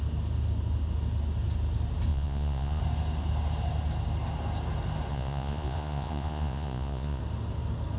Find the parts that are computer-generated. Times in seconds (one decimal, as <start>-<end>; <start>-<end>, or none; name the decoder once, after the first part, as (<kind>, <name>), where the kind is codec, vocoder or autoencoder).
2.1-2.8 (vocoder, Vocos); 5.1-7.2